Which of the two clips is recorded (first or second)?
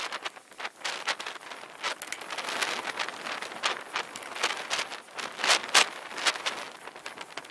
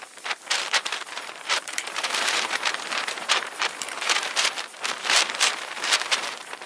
first